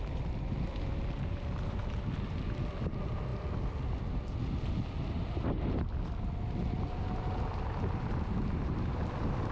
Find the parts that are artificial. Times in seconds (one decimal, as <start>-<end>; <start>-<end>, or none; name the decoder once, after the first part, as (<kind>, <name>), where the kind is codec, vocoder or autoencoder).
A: none